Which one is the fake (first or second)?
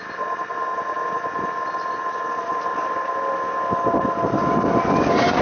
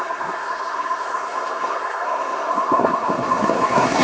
second